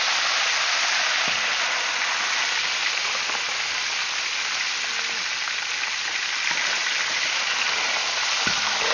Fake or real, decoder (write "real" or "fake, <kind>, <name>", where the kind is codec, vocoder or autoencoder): real